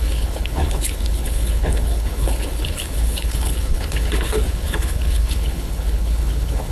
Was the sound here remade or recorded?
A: remade